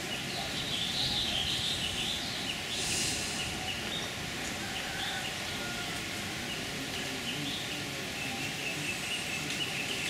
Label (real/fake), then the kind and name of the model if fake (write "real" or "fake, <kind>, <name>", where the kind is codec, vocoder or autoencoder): real